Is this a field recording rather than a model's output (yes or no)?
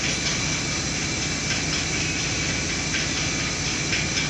yes